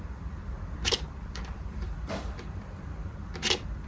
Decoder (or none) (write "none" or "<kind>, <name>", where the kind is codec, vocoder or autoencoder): vocoder, BigVGAN v2